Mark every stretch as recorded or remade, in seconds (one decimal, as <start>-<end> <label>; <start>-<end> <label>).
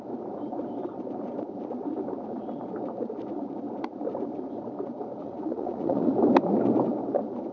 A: 0.0-5.2 recorded; 5.2-6.1 remade; 6.1-7.5 recorded